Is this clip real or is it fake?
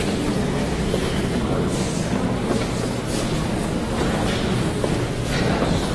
real